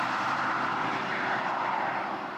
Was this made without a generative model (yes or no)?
yes